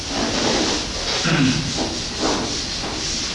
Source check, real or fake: real